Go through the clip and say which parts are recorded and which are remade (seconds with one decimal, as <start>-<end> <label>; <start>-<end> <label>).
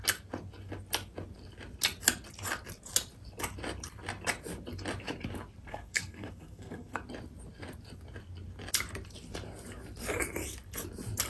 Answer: 0.0-5.7 recorded; 5.7-7.0 remade; 7.0-11.3 recorded